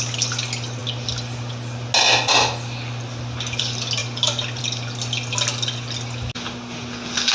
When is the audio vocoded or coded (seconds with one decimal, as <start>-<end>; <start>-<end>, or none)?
none